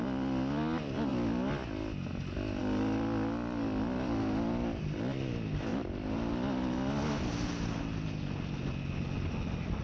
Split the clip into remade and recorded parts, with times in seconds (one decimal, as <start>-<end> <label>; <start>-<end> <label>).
0.0-9.8 recorded